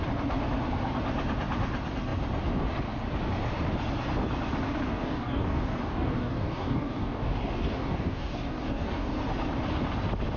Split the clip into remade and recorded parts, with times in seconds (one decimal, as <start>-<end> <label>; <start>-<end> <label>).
0.0-4.9 recorded; 4.9-9.1 remade; 9.1-10.4 recorded